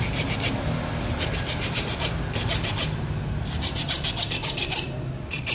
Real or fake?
real